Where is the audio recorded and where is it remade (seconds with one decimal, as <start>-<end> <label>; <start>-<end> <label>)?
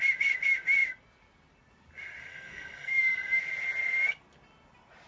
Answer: 0.0-2.3 recorded; 2.3-3.4 remade; 3.4-5.1 recorded